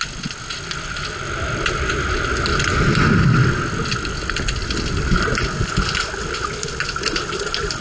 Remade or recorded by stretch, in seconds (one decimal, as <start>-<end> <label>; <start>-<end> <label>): 0.0-7.8 recorded